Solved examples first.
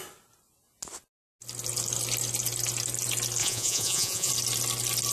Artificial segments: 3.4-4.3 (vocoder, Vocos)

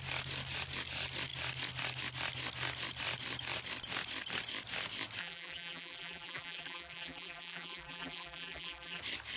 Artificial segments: 5.2-9.0 (vocoder, BigVGAN v2)

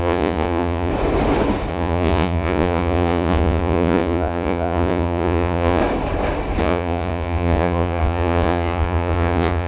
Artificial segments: 0.0-0.9 (vocoder, Vocos); 1.7-5.8; 6.6-9.7

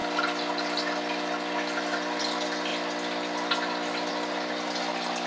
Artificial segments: none